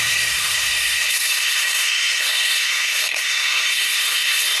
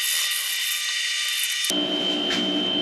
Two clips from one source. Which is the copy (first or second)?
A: first